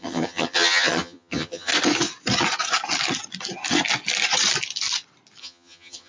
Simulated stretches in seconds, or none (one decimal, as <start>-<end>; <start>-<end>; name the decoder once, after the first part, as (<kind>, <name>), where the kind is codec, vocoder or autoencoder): 0.0-1.7 (vocoder, HiFi-GAN); 5.4-6.1